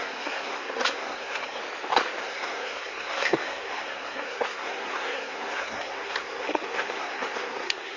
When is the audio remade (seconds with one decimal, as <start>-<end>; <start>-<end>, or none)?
0.0-1.6; 2.2-8.0